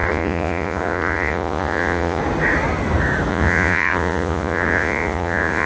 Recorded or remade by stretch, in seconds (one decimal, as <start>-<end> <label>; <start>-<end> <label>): 0.0-2.2 remade; 2.2-3.3 recorded; 3.3-5.7 remade